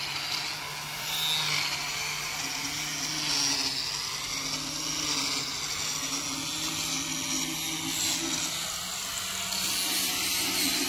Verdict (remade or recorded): recorded